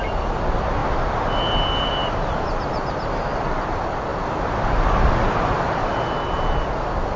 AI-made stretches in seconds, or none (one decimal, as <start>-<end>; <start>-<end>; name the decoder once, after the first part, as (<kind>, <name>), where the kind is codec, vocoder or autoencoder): none